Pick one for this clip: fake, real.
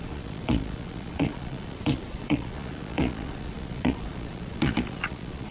fake